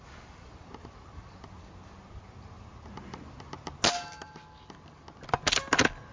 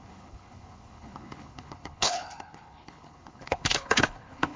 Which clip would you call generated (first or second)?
second